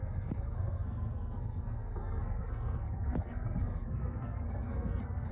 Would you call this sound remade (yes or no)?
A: yes